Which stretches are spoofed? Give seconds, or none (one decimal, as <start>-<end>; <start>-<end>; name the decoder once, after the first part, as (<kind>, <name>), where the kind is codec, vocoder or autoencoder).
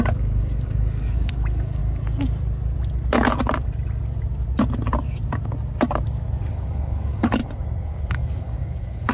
0.0-1.8 (codec, DAC); 6.5-7.4; 8.1-9.1